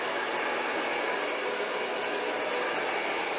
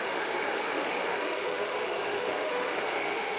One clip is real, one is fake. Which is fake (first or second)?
second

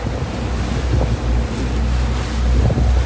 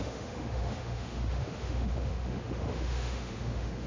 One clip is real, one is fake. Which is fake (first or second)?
second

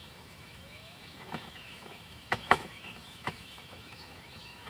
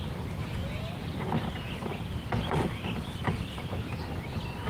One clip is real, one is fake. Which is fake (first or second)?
first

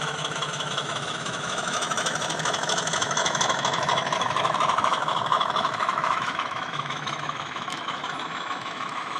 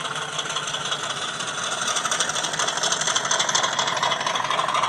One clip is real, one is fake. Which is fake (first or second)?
first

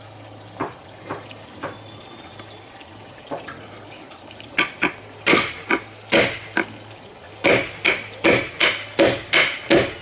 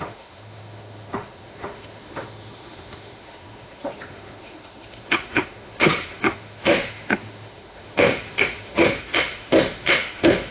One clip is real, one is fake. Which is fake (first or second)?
second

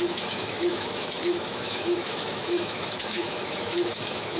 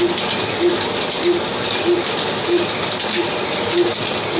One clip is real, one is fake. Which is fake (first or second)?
first